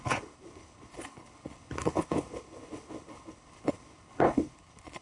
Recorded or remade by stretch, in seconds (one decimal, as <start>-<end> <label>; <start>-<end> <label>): 0.0-5.0 remade